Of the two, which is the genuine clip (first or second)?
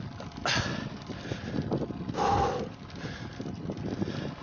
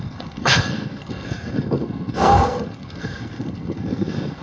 first